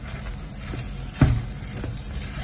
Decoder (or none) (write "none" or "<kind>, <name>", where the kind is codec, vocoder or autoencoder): none